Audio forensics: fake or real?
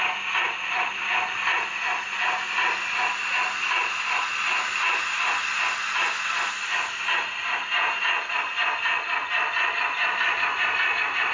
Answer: real